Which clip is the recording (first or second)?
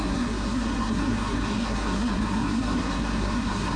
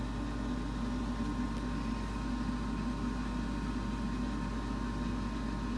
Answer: second